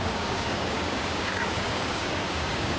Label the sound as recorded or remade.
remade